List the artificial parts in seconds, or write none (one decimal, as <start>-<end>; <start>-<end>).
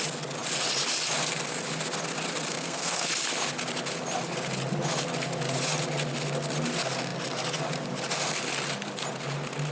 2.5-3.1